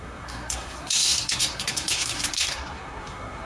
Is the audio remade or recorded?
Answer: remade